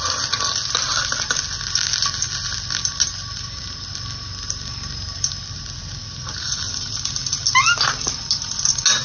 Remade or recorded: recorded